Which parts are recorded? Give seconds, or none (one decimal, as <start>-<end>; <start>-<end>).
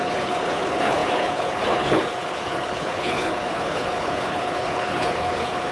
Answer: none